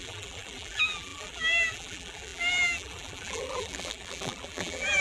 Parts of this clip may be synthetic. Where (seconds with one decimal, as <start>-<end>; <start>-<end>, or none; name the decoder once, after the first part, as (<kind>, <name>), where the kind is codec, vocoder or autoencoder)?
0.0-5.0 (vocoder, BigVGAN v2)